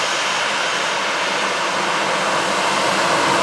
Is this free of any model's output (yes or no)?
yes